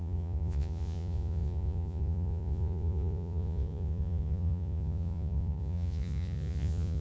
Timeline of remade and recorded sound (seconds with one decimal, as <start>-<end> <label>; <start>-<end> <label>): 0.0-7.0 remade